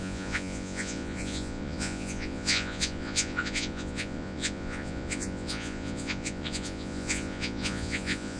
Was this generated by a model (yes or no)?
yes